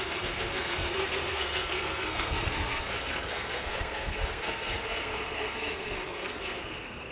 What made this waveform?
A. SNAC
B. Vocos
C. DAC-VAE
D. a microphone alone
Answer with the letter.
A